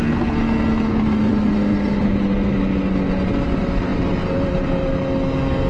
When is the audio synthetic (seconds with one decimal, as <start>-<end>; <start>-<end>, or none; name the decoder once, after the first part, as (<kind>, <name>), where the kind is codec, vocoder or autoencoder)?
none